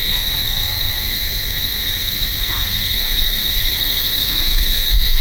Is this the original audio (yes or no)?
no